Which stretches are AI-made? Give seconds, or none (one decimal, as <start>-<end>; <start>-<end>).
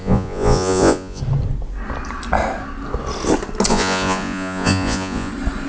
0.0-1.2; 3.7-5.3